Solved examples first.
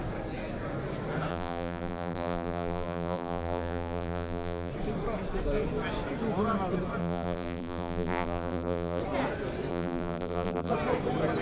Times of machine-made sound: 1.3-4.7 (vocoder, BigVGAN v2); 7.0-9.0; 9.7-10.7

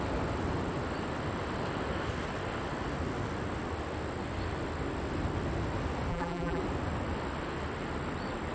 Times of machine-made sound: 6.1-6.6 (vocoder, BigVGAN v2)

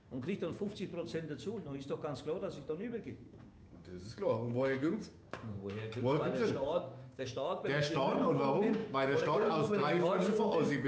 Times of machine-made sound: 0.0-1.1 (codec, DAC); 2.7-10.9

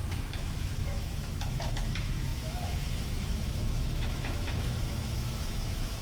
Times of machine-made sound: 0.0-6.0 (autoencoder, DAC-VAE)

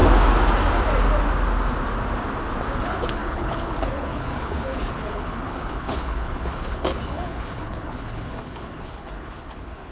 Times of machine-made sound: 2.8-9.9 (codec, HILCodec)

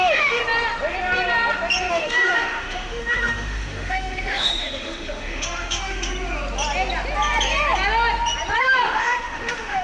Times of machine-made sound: 0.0-0.4 (autoencoder, DAC-VAE); 1.9-6.1; 8.6-9.8

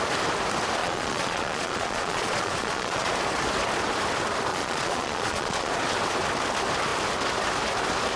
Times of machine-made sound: 0.8-3.1 (vocoder, Vocos); 4.5-5.7

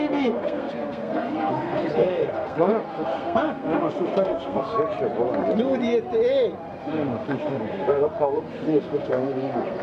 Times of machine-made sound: 0.0-4.7 (codec, SNAC); 6.8-9.8